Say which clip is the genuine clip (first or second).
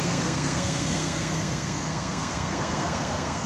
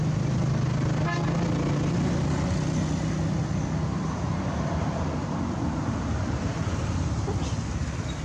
second